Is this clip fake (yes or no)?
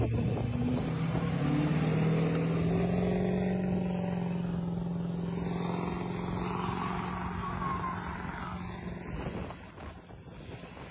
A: no